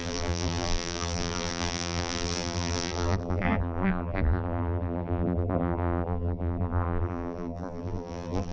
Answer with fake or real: fake